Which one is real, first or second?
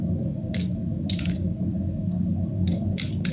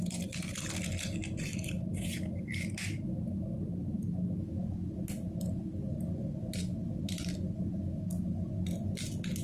second